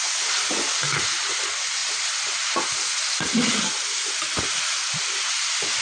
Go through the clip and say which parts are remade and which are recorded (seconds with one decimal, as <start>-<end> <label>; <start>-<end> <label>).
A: 0.0-5.8 recorded